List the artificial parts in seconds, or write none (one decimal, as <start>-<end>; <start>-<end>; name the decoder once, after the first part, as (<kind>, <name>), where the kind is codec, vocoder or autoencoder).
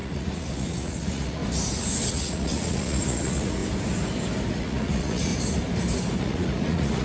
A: 0.0-1.4 (vocoder, Vocos); 2.1-3.6; 4.5-5.3; 6.2-7.0